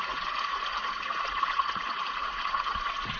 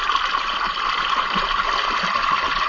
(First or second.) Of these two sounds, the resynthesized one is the first